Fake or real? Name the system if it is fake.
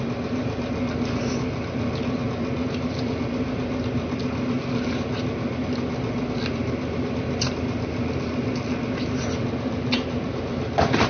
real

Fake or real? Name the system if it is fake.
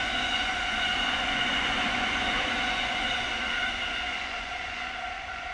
fake, vocoder, Vocos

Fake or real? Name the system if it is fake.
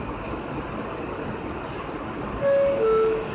real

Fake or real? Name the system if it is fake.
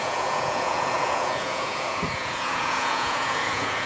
fake, vocoder, Vocos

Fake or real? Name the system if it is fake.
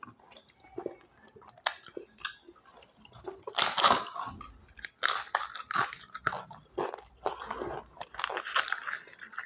real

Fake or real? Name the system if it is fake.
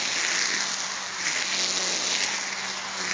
real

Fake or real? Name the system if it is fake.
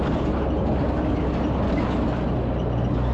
real